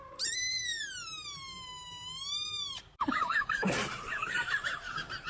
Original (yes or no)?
no